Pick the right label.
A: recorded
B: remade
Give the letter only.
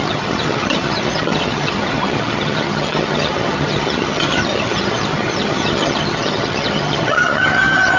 B